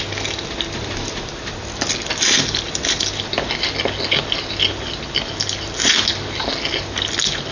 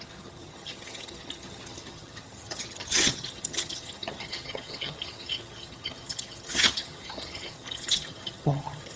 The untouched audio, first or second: first